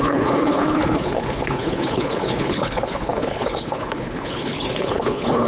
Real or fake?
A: fake